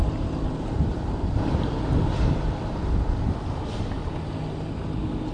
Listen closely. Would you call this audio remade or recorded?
recorded